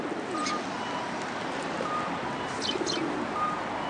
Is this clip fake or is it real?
real